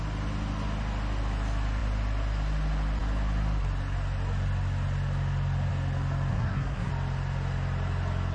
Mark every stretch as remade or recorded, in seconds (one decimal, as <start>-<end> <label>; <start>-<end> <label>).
0.0-6.3 recorded; 6.3-6.9 remade; 6.9-8.3 recorded